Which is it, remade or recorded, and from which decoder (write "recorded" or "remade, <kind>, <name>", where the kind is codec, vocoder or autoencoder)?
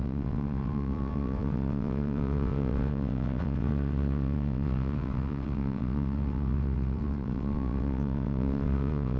remade, vocoder, WaveNeXt